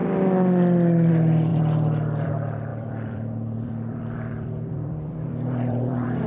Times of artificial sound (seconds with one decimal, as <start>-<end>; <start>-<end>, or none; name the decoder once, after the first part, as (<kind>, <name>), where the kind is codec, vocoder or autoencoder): 1.5-2.3 (vocoder, BigVGAN v2); 2.7-6.3